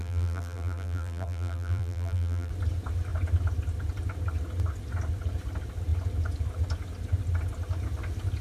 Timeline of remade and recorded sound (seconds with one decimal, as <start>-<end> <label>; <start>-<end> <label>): 0.0-2.5 remade; 2.5-8.4 recorded